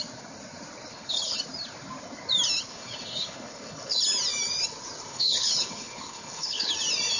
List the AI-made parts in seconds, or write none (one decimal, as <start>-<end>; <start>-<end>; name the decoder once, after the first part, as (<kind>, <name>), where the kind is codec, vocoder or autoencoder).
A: 0.9-1.4 (codec, HILCodec); 2.7-4.0; 5.1-6.7